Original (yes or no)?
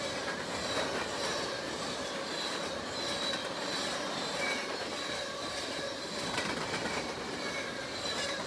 yes